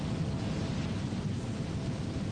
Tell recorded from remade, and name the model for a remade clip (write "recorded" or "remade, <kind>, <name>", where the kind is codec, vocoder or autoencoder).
recorded